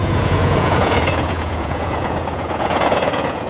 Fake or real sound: fake